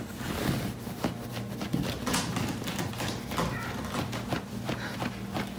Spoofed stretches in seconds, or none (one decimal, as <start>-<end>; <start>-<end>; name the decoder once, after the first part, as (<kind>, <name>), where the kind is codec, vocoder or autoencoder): none